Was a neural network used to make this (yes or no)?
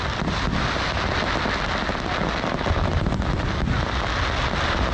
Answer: no